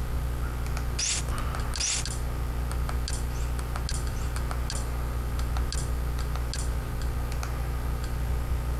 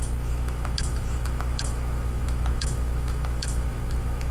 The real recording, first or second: first